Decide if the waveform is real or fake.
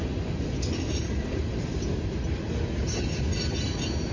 real